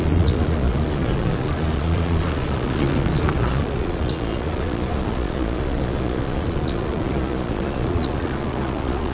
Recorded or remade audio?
remade